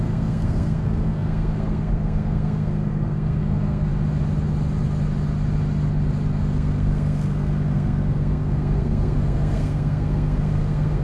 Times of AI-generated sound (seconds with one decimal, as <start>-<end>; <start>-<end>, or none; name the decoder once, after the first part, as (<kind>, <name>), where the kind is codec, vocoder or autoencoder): 0.0-3.9 (codec, SNAC); 6.4-11.0